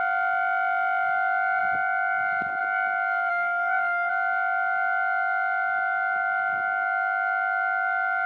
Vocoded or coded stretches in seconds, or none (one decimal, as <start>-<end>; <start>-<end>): 3.3-4.1